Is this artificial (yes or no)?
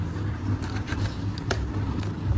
no